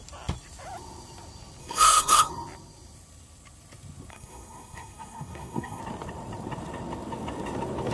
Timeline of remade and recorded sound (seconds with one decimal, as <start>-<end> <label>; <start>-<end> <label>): 0.0-1.6 recorded; 1.6-2.3 remade; 2.3-4.1 recorded; 4.1-5.8 remade; 5.8-7.9 recorded